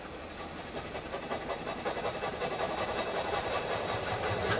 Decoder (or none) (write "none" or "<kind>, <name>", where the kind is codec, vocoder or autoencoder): none